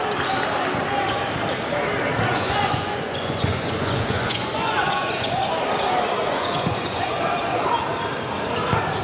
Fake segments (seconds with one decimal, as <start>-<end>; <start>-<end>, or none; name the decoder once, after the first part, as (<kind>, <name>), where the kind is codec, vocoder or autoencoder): 2.3-5.5 (vocoder, Vocos); 6.2-7.7